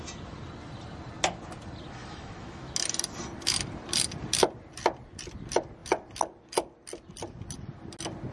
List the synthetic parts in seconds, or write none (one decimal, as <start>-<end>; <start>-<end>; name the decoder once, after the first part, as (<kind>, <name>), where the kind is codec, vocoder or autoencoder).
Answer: 2.0-2.7 (autoencoder, DAC-VAE)